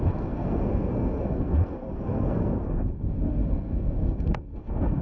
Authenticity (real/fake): fake